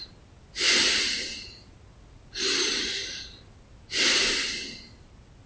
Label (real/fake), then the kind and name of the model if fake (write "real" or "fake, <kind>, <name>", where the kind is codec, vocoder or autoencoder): real